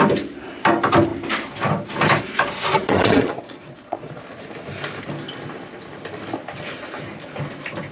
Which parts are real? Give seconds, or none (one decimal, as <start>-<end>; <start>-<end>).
0.0-2.7; 4.2-7.9